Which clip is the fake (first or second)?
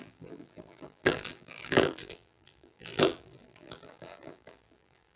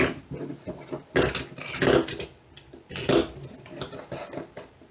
first